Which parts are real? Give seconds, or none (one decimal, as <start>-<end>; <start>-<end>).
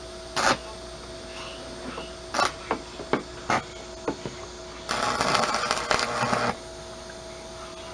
0.0-7.9